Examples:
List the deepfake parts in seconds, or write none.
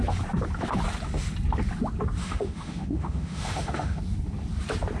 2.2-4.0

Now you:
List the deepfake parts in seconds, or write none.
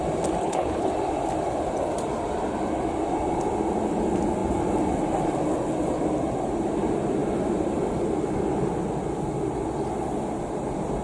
0.4-0.9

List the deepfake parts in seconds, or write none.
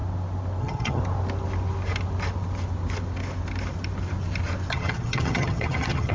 0.6-1.0; 4.7-6.1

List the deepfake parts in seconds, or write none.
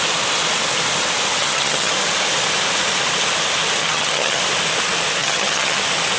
1.4-1.9; 3.8-4.4; 5.2-5.8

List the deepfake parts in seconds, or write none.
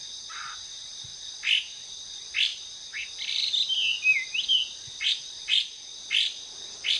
none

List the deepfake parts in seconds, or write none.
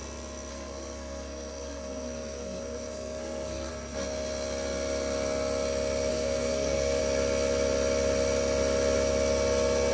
0.5-3.7; 6.1-7.0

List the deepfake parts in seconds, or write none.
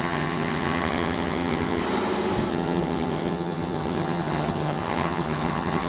0.0-1.8; 2.5-5.9